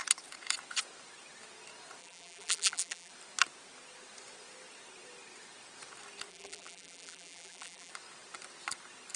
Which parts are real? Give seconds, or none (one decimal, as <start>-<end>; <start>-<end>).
0.0-2.0; 3.1-6.3; 7.9-9.2